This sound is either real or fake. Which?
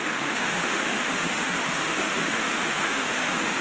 fake